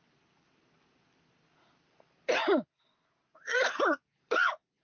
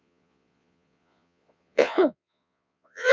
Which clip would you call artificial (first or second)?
second